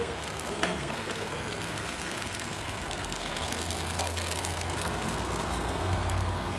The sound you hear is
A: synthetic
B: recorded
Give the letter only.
A